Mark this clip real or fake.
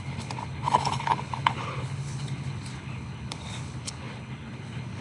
fake